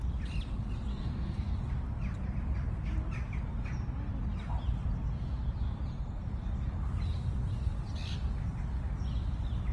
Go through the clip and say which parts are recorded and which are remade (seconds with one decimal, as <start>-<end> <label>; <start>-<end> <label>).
0.0-0.9 recorded; 0.9-1.5 remade; 1.5-9.7 recorded